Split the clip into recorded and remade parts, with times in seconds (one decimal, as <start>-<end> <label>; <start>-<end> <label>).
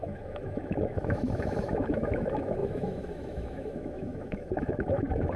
0.0-5.4 remade